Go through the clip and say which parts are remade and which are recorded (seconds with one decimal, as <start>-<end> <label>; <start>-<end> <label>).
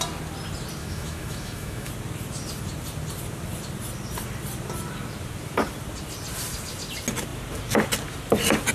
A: 0.0-0.8 recorded; 0.8-1.9 remade; 1.9-8.7 recorded